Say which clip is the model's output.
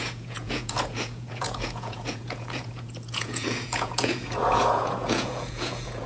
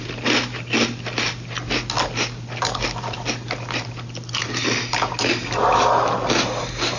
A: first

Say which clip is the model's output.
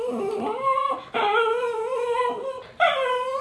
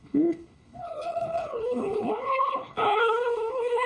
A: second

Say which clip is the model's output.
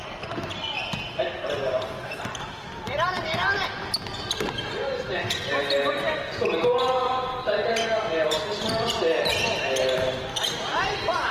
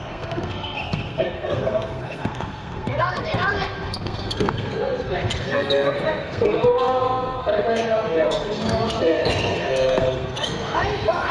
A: second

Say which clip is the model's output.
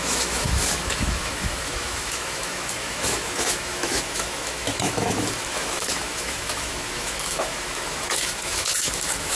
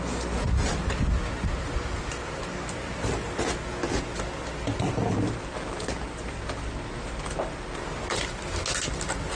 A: first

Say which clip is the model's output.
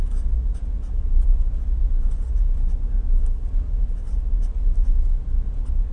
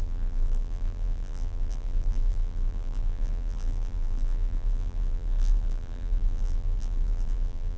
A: second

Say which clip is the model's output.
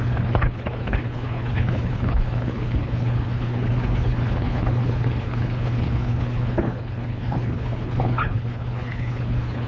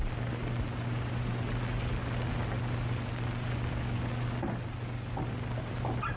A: first